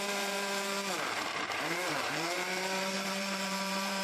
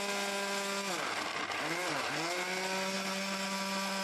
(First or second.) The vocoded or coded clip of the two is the first